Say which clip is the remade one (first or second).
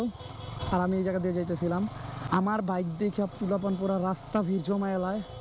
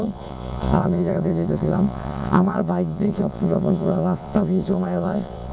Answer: second